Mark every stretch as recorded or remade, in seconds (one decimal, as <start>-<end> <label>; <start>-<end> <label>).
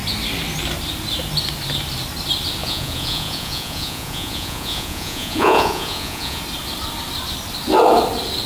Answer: 0.0-2.6 recorded; 2.6-6.4 remade; 6.4-8.5 recorded